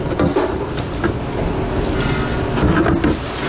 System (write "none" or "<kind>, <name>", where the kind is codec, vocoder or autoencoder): none